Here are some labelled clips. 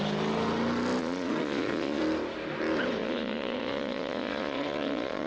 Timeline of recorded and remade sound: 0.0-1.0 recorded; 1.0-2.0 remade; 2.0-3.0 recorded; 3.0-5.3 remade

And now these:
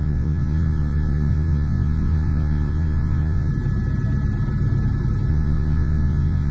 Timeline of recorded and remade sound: 0.0-3.5 remade; 3.5-5.3 recorded; 5.3-6.5 remade

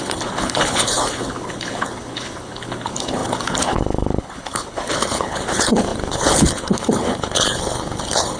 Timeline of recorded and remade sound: 0.0-8.4 remade

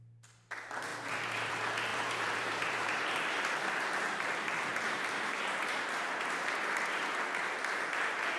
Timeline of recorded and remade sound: 0.0-0.9 recorded; 0.9-1.5 remade; 1.5-1.9 recorded; 1.9-3.6 remade; 3.6-4.7 recorded; 4.7-7.0 remade; 7.0-8.4 recorded

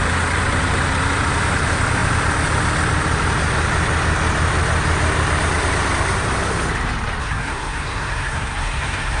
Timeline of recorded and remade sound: 0.0-7.2 recorded; 7.2-9.2 remade

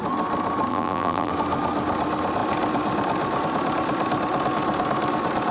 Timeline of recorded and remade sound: 0.0-0.7 recorded; 0.7-1.3 remade; 1.3-5.5 recorded

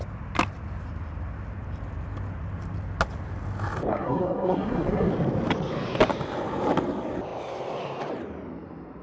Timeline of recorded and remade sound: 0.0-3.9 recorded; 3.9-5.1 remade; 5.1-9.0 recorded

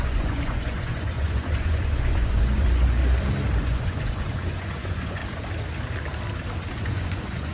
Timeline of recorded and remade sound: 0.0-3.0 remade; 3.0-3.6 recorded; 3.6-5.2 remade; 5.2-6.7 recorded; 6.7-7.5 remade